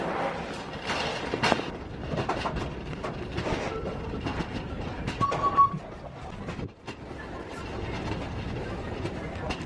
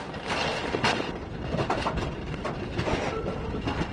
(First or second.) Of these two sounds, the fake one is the second